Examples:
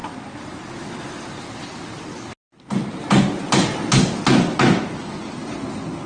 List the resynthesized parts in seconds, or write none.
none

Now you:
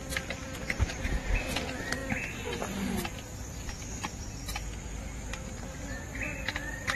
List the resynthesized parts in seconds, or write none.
0.6-1.6 (vocoder, Vocos)

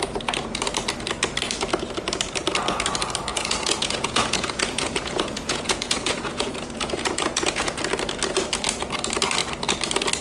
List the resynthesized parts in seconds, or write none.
3.3-7.8 (vocoder, Vocos)

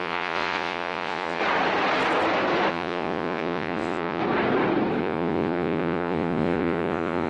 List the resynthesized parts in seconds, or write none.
0.0-1.4 (vocoder, Vocos); 2.7-4.2; 5.0-7.3

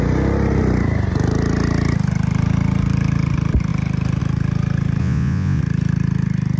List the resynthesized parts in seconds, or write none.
5.0-5.6 (vocoder, Vocos)

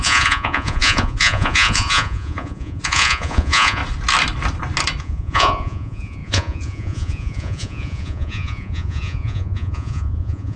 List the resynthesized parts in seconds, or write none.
0.0-3.8 (vocoder, Vocos); 5.0-10.6